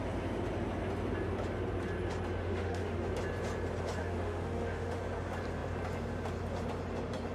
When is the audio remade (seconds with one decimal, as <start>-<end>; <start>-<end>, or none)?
2.4-3.1; 4.0-5.0